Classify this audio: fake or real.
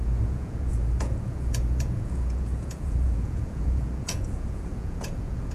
fake